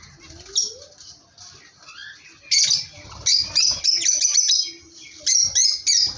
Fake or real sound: real